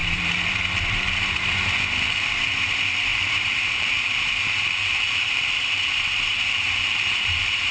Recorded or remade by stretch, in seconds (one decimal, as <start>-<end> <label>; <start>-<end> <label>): 0.0-1.1 remade; 1.1-3.1 recorded; 3.1-5.5 remade; 5.5-6.3 recorded; 6.3-7.7 remade